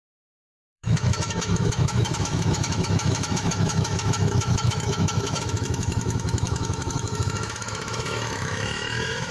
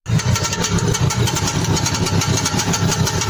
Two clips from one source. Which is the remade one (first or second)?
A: first